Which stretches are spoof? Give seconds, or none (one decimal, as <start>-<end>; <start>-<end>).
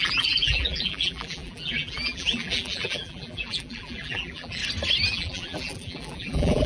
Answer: 0.0-4.6; 5.1-6.7